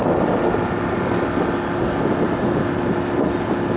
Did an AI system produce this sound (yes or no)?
no